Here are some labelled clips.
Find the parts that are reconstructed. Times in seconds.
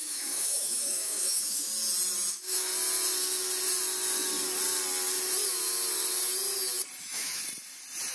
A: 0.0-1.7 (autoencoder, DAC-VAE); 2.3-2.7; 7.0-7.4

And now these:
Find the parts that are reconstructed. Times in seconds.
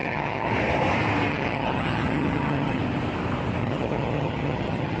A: 0.0-0.5 (vocoder, HiFi-GAN); 1.3-2.8; 3.6-5.0